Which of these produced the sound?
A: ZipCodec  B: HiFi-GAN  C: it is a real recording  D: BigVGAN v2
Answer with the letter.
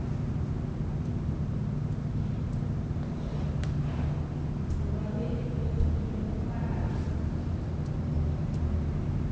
C